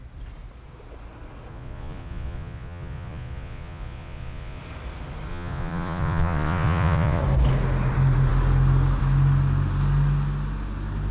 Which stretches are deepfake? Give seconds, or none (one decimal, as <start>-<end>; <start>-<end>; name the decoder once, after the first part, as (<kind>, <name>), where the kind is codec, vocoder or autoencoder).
1.5-4.6 (vocoder, Vocos); 5.3-7.2